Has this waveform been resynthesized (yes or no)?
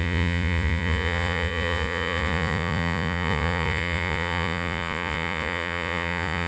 yes